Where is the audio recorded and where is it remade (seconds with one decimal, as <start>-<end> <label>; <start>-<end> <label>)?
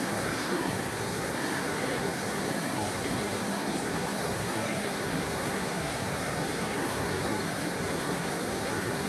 0.0-9.1 remade